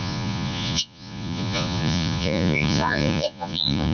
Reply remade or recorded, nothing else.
remade